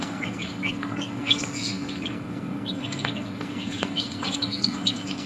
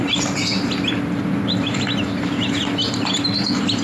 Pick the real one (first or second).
second